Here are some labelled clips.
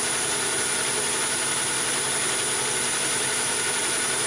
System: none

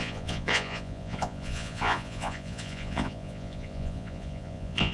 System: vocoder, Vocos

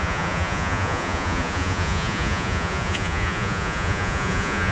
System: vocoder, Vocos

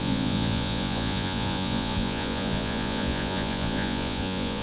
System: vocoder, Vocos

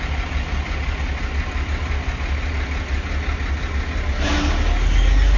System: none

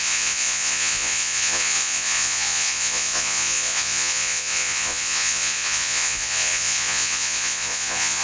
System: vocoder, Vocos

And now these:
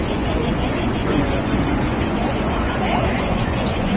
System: vocoder, Vocos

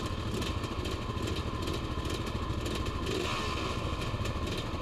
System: none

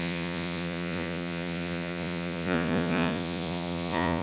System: vocoder, Vocos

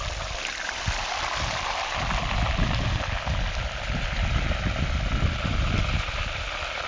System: none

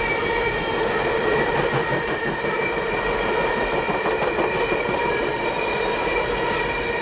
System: none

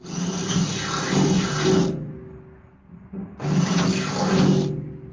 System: none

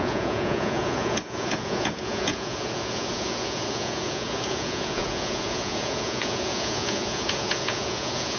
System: vocoder, Vocos